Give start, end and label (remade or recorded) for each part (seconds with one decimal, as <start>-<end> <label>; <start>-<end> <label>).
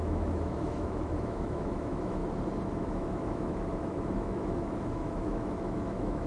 0.0-2.2 remade; 2.2-2.8 recorded; 2.8-6.3 remade